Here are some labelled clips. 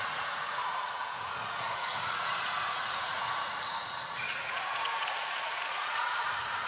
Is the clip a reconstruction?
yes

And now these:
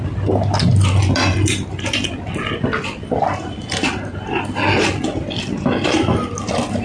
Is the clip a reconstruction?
no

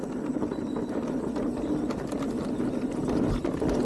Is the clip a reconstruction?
no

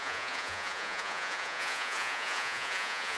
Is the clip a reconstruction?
yes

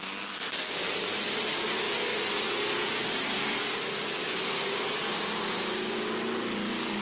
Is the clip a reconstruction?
no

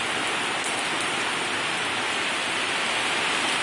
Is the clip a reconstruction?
no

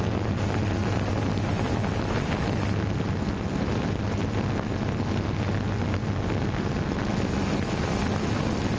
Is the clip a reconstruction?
no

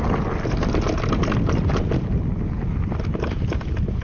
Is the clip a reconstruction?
no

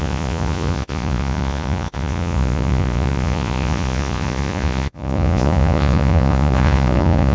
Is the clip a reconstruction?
yes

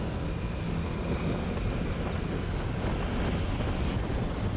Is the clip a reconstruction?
no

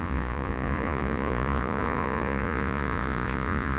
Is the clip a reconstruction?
yes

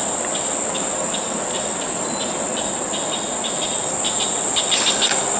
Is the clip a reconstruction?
no